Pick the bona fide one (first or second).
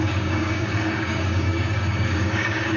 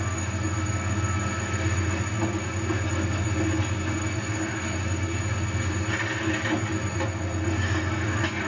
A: second